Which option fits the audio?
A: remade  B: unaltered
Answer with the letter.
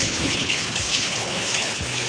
A